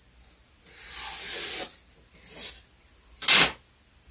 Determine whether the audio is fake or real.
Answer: real